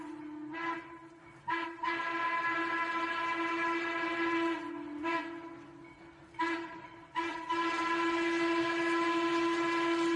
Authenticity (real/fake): real